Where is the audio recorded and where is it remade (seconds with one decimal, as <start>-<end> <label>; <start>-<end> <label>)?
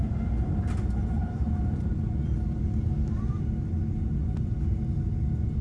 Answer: 0.0-1.2 recorded; 1.2-4.6 remade; 4.6-5.6 recorded